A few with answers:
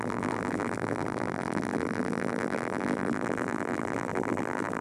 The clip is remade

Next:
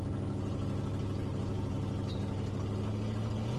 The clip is recorded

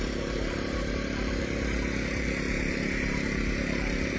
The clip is remade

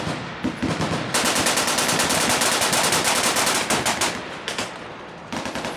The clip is remade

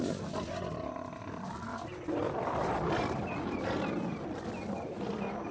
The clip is recorded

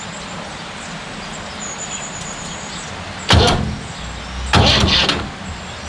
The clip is recorded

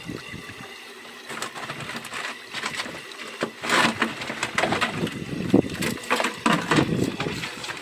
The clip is recorded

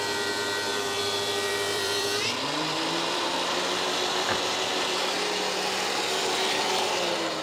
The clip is remade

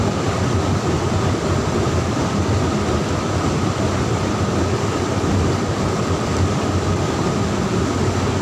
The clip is remade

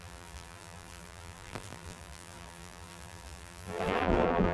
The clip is remade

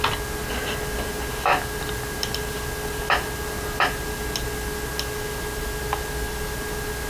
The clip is recorded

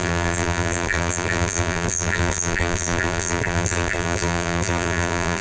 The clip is remade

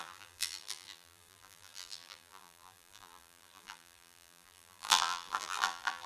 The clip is remade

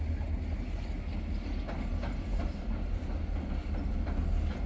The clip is recorded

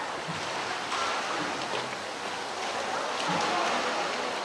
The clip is recorded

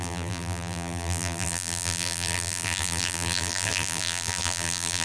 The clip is remade